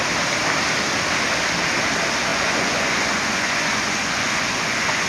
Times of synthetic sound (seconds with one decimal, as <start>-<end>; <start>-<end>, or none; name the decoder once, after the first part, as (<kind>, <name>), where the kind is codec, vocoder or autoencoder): 2.3-5.1 (vocoder, Vocos)